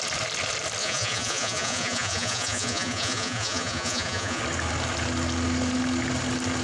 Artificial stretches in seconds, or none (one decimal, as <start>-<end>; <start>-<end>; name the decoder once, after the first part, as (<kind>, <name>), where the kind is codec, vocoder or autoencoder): 0.8-4.4 (vocoder, Vocos)

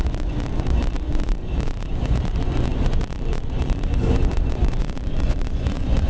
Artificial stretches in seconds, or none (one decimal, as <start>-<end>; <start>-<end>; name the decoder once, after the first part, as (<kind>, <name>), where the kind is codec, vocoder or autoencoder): 0.0-6.1 (vocoder, Vocos)

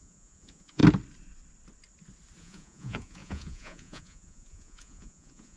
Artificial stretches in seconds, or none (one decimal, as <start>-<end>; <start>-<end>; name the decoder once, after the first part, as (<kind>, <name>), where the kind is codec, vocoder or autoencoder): 0.0-0.8 (vocoder, Vocos); 2.4-5.6

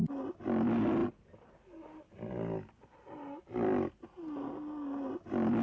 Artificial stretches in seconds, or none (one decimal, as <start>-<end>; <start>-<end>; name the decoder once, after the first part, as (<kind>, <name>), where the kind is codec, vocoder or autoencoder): none